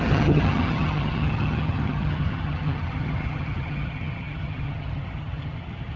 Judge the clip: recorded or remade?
remade